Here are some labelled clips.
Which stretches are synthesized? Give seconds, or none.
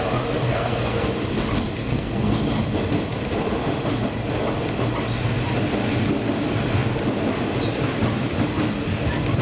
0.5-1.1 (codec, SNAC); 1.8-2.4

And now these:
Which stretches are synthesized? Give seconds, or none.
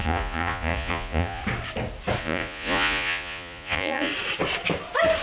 0.0-1.4 (vocoder, Vocos); 2.2-4.1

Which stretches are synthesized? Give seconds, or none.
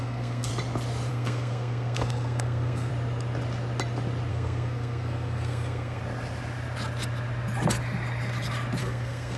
0.0-0.5 (codec, SNAC); 1.1-2.9; 4.3-6.0; 8.8-9.4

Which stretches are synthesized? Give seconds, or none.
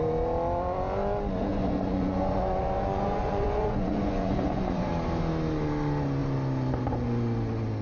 1.5-4.9 (vocoder, Vocos)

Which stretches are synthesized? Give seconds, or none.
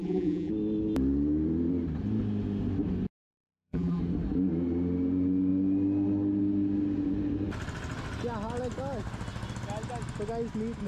0.0-0.5 (vocoder, BigVGAN v2); 3.3-4.0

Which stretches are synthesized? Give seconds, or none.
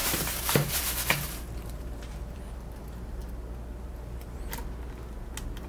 0.0-3.2 (vocoder, BigVGAN v2); 3.9-4.6